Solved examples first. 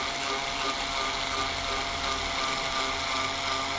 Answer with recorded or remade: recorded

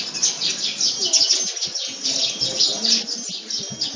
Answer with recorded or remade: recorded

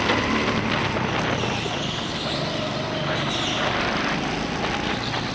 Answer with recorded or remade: recorded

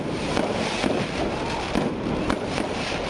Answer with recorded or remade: recorded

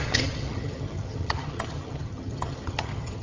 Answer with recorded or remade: remade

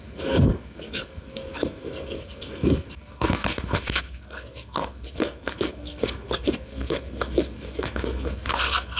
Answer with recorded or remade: remade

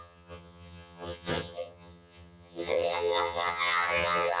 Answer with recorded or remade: remade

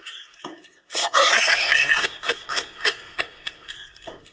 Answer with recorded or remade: remade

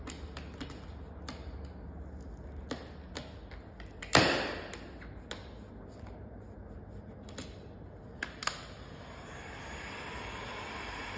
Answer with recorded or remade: recorded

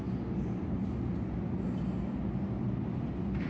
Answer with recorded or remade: recorded